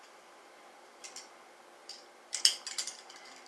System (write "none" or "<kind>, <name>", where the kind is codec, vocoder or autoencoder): none